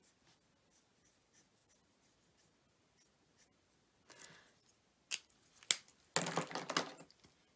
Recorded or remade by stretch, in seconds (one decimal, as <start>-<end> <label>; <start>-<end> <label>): 0.0-7.6 recorded